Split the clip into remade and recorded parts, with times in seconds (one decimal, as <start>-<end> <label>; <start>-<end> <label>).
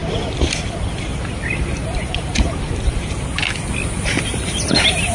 0.0-1.6 recorded; 1.6-3.4 remade; 3.4-4.0 recorded; 4.0-5.1 remade